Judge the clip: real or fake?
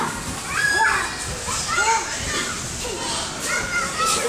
real